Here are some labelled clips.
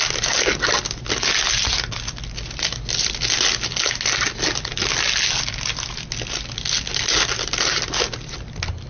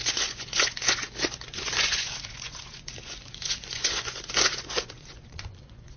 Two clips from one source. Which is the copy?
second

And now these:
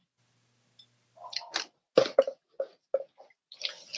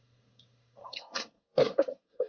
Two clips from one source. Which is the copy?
second